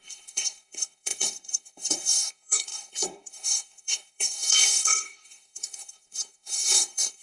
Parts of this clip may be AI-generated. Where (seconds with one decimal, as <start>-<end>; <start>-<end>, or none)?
0.0-7.2